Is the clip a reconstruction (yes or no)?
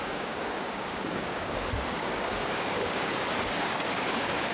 yes